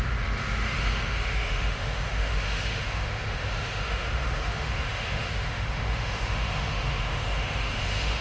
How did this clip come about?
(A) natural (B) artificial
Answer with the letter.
B